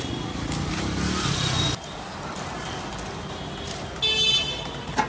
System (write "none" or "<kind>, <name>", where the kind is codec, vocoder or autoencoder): none